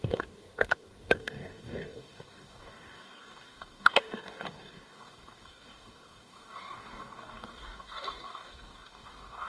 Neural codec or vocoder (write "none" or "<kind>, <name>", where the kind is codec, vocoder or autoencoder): codec, DAC